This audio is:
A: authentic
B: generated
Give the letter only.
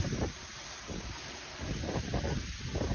B